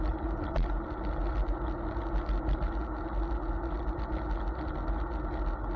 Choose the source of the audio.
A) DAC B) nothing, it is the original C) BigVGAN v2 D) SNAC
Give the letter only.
B